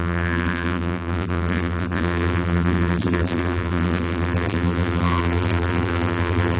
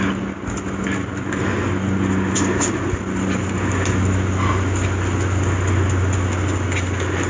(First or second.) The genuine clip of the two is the second